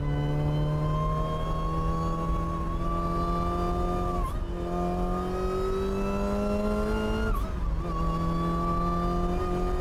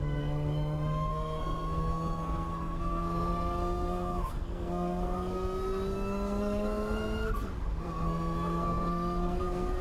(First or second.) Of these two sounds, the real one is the first